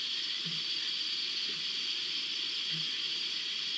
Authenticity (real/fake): real